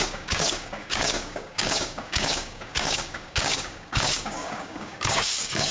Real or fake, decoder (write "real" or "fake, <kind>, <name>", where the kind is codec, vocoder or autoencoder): fake, codec, DAC